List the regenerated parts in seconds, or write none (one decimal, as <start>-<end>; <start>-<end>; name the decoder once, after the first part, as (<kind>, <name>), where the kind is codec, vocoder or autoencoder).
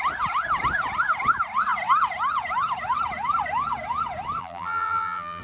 4.4-5.4 (vocoder, BigVGAN v2)